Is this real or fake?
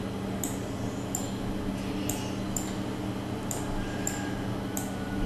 real